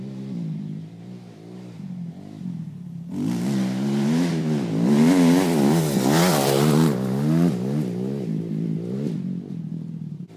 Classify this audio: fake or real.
real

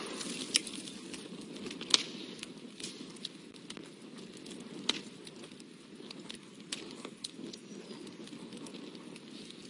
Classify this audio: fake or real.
real